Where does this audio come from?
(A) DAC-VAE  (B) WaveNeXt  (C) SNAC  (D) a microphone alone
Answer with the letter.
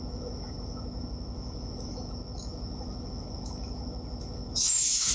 A